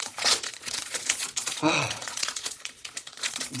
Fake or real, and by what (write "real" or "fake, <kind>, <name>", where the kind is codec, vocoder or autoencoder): fake, vocoder, Vocos